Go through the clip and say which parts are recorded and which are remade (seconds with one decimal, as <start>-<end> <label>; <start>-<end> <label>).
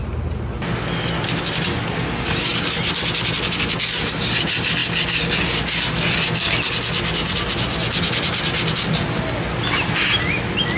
0.0-10.8 recorded